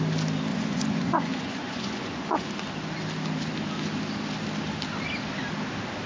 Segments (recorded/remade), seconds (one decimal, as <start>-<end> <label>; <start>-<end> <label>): 0.0-0.5 recorded; 0.5-2.5 remade; 2.5-6.1 recorded